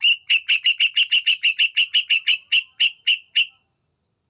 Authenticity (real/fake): real